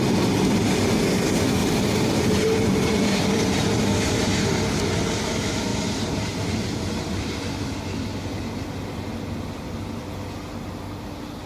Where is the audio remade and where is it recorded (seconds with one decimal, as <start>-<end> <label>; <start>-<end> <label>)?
0.0-1.6 recorded; 1.6-4.6 remade; 4.6-5.7 recorded; 5.7-6.9 remade; 6.9-11.5 recorded